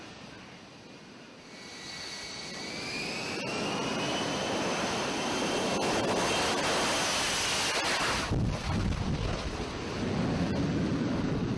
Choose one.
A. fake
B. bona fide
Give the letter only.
B